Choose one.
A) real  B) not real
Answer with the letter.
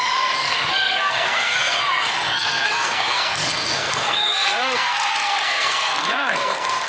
B